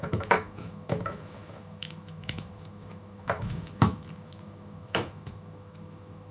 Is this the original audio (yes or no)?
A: no